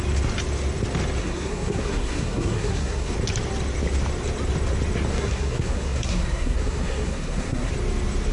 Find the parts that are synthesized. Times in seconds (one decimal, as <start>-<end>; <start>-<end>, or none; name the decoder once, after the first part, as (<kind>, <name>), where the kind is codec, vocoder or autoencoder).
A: 1.2-3.1 (codec, SNAC); 5.1-7.7